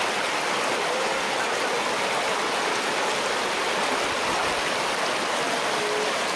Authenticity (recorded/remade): recorded